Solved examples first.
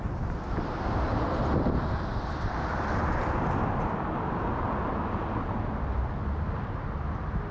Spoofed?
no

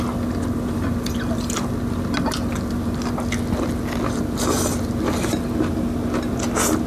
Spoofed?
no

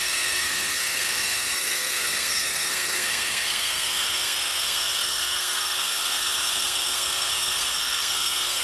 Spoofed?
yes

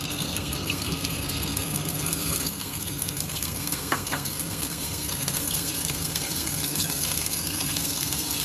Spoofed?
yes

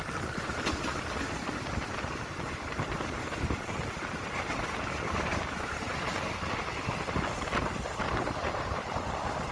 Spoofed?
no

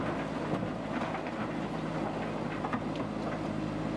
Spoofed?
no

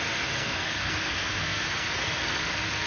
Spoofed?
yes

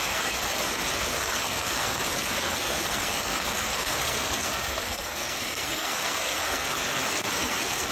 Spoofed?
yes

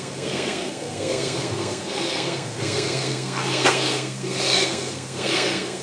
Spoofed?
yes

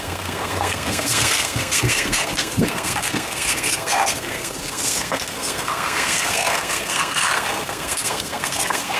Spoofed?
yes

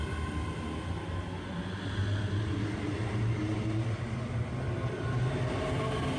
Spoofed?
no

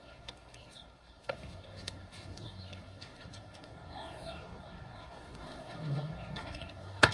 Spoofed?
yes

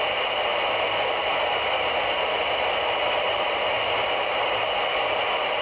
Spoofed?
no